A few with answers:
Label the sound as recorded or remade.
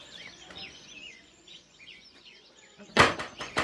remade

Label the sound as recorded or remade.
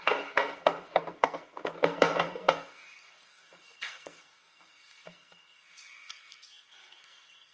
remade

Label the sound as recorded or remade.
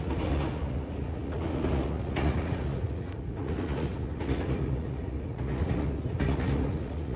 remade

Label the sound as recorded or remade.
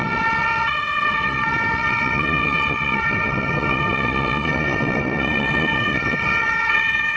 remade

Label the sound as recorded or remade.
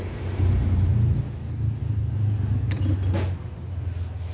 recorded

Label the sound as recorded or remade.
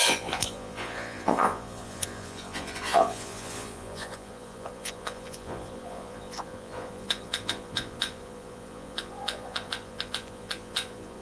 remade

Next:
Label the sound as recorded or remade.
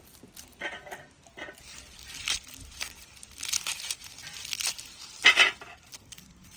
recorded